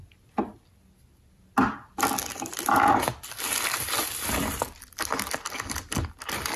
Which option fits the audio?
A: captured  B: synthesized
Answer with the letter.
A